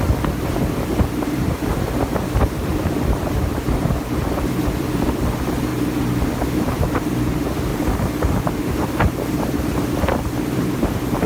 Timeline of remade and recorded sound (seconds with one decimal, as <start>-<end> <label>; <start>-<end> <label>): 0.0-3.5 remade; 3.5-4.4 recorded; 4.4-5.7 remade; 5.7-6.2 recorded; 6.2-11.3 remade

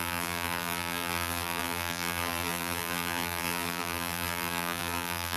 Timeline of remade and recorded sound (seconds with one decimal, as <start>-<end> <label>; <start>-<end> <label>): 0.0-5.4 remade

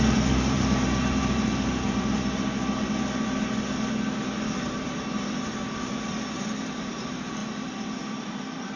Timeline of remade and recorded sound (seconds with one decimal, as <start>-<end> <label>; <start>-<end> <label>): 0.0-2.6 remade; 2.6-4.6 recorded; 4.6-8.8 remade